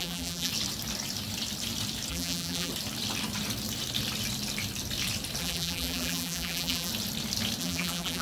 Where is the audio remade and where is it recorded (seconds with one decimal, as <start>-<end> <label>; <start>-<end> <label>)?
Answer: 0.0-0.5 remade; 0.5-2.1 recorded; 2.1-2.7 remade; 2.7-5.4 recorded; 5.4-6.9 remade; 6.9-7.6 recorded; 7.6-8.2 remade